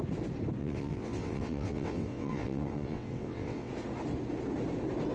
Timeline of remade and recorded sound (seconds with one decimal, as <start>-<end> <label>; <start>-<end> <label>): 0.0-0.6 recorded; 0.6-3.7 remade; 3.7-5.1 recorded

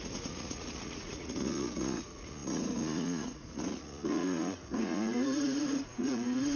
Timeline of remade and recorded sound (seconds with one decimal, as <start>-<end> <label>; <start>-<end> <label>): 0.0-6.6 remade

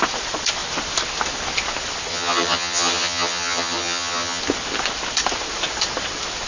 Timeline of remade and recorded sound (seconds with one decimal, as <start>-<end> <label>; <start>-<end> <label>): 0.0-2.1 recorded; 2.1-4.4 remade; 4.4-6.5 recorded